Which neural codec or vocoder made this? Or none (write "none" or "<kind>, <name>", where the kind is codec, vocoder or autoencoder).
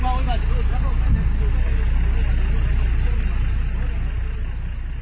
none